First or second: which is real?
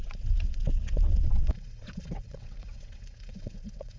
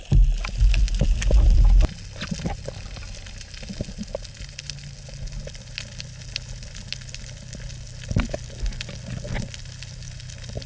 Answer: second